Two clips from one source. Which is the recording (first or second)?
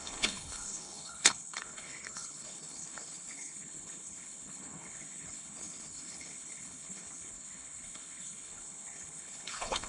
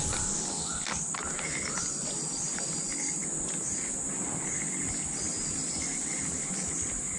second